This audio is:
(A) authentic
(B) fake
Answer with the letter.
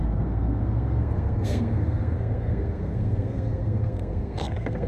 B